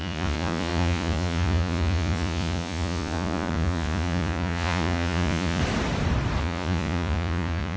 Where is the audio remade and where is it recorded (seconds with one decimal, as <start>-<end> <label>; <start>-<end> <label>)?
0.0-5.6 remade; 5.6-6.4 recorded; 6.4-7.8 remade